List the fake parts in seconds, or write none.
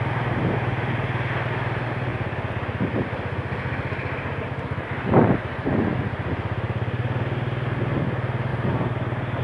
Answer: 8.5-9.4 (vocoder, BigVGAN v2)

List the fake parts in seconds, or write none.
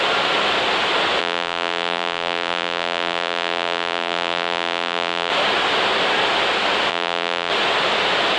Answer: 1.2-5.3 (vocoder, BigVGAN v2); 6.9-7.5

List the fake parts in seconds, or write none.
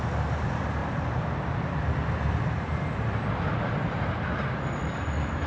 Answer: 0.8-4.1 (vocoder, BigVGAN v2)